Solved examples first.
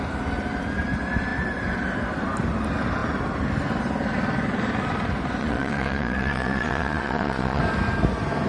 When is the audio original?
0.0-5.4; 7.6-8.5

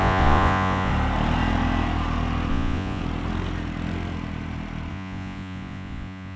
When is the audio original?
0.9-2.5; 3.0-4.9

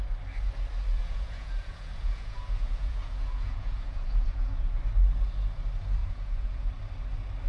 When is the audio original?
0.0-0.9; 4.8-6.0; 6.7-7.5

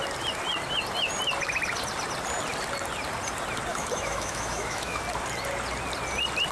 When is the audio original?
0.0-3.7; 5.0-6.5

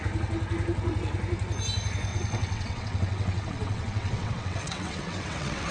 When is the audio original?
0.0-2.1

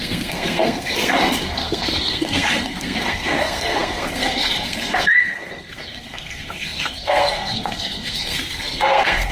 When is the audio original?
none

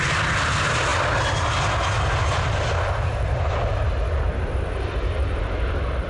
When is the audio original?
0.0-6.1

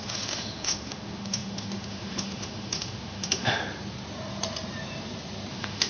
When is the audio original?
3.6-5.5